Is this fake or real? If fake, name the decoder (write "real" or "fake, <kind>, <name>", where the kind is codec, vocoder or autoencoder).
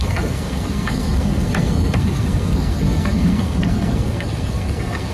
fake, codec, SNAC